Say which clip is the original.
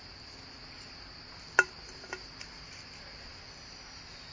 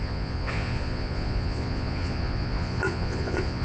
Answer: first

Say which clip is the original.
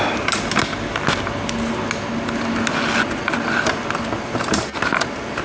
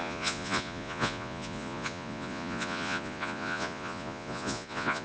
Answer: first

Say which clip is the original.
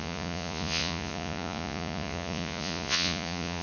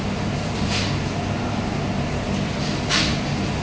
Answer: second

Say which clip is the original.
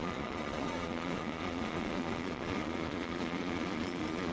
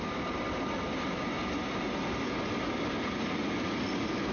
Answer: second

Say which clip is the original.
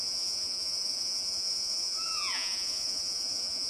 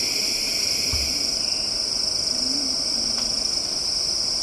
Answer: second